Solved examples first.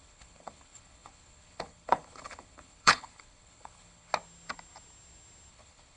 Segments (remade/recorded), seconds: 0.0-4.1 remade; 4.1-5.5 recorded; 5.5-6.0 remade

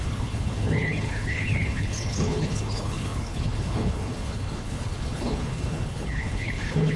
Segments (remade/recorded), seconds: 0.0-7.0 remade

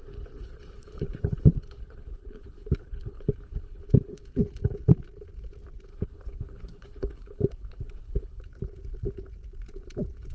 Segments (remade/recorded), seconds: 0.0-4.2 remade; 4.2-5.9 recorded; 5.9-8.4 remade; 8.4-10.3 recorded